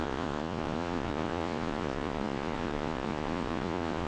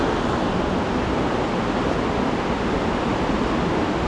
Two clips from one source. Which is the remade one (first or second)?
first